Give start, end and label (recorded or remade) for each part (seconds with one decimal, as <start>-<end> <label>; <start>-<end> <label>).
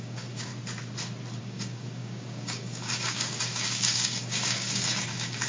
0.0-0.5 remade; 0.5-1.4 recorded; 1.4-5.5 remade